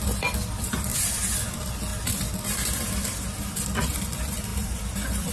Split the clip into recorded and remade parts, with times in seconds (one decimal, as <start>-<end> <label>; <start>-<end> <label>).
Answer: 0.0-4.5 recorded; 4.5-5.3 remade